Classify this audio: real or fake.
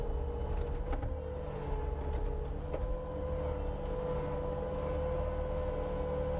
real